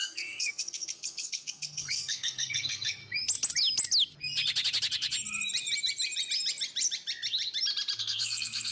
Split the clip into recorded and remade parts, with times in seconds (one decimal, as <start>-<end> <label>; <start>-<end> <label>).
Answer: 0.0-3.0 remade; 3.0-8.0 recorded; 8.0-8.7 remade